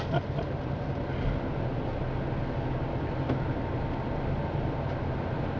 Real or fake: real